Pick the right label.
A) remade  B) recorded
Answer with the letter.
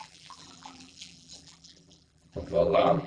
A